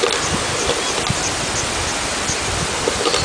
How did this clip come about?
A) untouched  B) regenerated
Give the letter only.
A